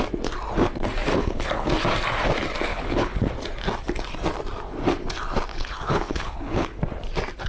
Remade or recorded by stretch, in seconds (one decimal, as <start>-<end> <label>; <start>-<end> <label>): 0.0-1.1 recorded; 1.1-1.7 remade; 1.7-2.7 recorded; 2.7-3.3 remade; 3.3-5.5 recorded; 5.5-6.8 remade; 6.8-7.5 recorded

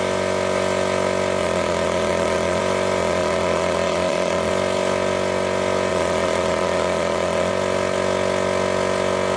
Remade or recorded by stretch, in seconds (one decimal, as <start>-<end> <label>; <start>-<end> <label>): 0.0-1.4 recorded; 1.4-2.6 remade; 2.6-3.0 recorded; 3.0-4.5 remade; 4.5-5.9 recorded; 5.9-7.5 remade; 7.5-9.4 recorded

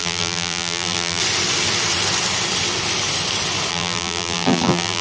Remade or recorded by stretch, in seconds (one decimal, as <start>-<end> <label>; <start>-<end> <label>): 0.0-1.2 remade; 1.2-3.7 recorded; 3.7-5.0 remade

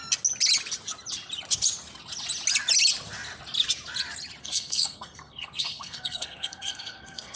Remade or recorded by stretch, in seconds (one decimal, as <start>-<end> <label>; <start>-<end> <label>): 0.0-4.4 recorded; 4.4-7.4 remade

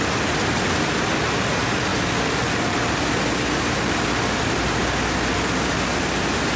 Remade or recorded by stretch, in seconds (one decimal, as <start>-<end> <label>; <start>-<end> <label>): 0.0-6.6 recorded

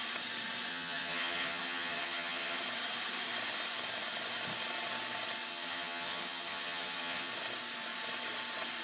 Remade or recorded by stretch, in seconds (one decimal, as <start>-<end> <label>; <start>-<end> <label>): 0.0-0.7 recorded; 0.7-2.6 remade; 2.6-5.5 recorded; 5.5-7.3 remade; 7.3-8.8 recorded

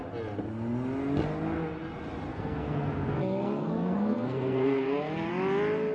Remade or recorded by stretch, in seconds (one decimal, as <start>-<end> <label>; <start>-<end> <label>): 0.0-2.3 recorded; 2.3-5.3 remade; 5.3-5.9 recorded